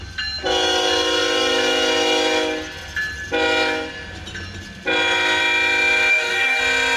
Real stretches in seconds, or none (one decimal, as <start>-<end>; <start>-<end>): 0.0-6.1; 6.6-7.0